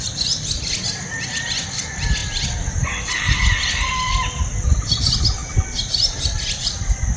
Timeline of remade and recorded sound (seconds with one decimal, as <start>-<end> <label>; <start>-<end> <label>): 0.0-7.2 recorded

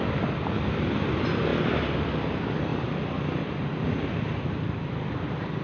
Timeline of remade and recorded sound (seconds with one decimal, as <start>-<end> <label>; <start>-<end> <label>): 0.0-5.6 recorded

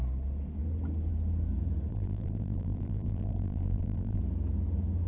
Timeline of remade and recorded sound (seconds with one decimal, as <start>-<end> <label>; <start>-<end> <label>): 0.0-1.9 recorded; 1.9-4.2 remade; 4.2-5.1 recorded